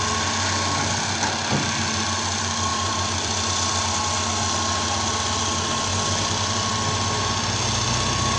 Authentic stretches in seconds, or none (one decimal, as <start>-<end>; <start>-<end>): 0.0-2.7; 4.0-8.4